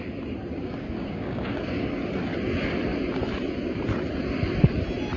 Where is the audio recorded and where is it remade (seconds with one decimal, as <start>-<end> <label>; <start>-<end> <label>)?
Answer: 0.0-0.5 recorded; 0.5-2.0 remade; 2.0-5.2 recorded